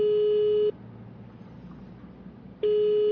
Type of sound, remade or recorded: recorded